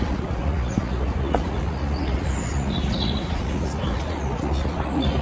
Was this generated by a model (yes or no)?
yes